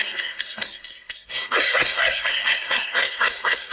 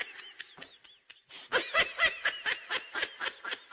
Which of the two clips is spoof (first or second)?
first